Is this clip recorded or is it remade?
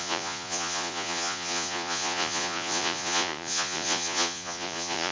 remade